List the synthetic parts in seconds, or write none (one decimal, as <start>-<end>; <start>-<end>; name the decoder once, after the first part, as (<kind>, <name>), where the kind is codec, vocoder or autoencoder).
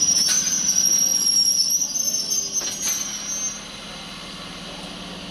none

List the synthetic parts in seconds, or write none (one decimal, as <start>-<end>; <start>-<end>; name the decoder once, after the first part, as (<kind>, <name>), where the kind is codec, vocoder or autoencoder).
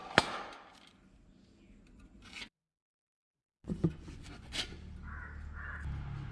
2.2-4.7 (vocoder, Vocos)